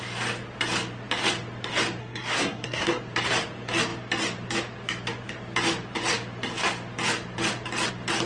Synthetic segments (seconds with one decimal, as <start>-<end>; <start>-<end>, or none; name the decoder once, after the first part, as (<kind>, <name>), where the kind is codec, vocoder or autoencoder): 2.0-3.0 (codec, SNAC)